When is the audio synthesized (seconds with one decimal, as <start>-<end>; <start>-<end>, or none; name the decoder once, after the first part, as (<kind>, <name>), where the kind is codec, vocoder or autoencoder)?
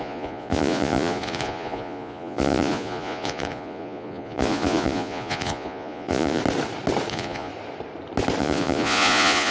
0.0-6.4 (vocoder, Vocos); 7.1-7.5; 8.4-9.5